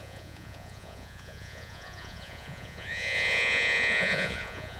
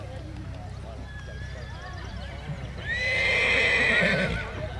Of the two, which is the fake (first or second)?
first